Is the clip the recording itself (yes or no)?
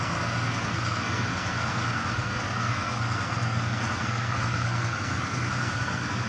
no